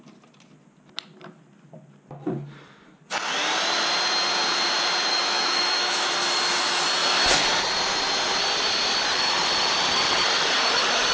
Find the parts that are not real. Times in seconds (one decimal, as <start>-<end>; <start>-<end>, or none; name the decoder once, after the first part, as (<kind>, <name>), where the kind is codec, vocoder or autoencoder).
5.1-6.1 (autoencoder, DAC-VAE)